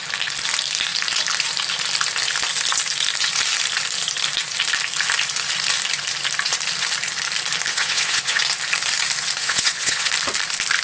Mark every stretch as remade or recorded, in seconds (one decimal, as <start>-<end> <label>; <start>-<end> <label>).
0.0-7.7 recorded; 7.7-8.4 remade; 8.4-9.4 recorded; 9.4-10.1 remade; 10.1-10.8 recorded